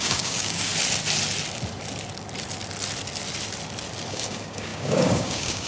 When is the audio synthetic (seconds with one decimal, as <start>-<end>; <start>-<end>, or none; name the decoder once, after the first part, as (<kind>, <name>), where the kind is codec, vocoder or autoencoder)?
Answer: 0.0-0.7 (codec, DAC); 4.1-5.7